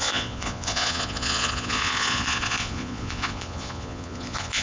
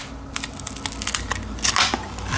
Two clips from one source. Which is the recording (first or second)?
second